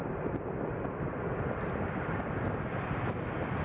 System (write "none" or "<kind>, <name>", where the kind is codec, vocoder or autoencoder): none